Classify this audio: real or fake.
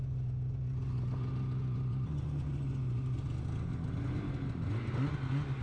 real